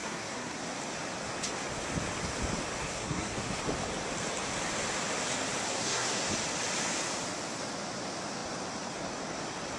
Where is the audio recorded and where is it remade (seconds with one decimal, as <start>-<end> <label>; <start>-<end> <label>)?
0.0-0.6 remade; 0.6-2.8 recorded; 2.8-3.6 remade; 3.6-5.7 recorded; 5.7-6.3 remade; 6.3-9.8 recorded